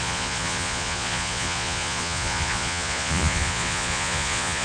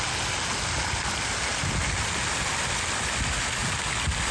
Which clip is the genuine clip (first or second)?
second